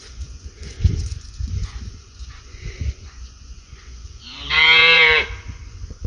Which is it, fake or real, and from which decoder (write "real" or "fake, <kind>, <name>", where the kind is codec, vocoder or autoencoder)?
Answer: fake, vocoder, Vocos